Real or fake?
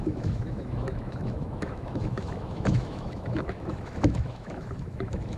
fake